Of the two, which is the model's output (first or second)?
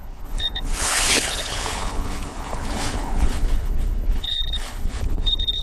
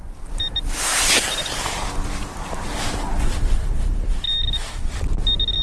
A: first